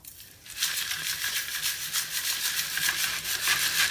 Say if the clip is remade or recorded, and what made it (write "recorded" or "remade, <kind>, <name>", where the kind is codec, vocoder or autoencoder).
remade, vocoder, BigVGAN v2